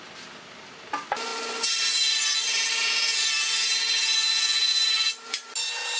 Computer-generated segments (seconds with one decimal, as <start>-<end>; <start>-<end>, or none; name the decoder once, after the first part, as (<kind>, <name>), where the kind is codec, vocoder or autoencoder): none